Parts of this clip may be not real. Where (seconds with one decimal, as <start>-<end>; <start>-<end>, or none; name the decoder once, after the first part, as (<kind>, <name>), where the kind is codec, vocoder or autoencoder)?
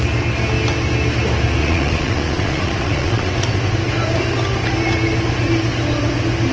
1.6-3.3 (vocoder, Vocos)